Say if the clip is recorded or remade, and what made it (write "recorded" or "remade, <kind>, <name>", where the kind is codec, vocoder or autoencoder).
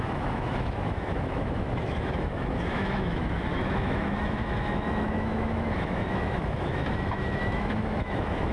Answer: remade, autoencoder, DAC-VAE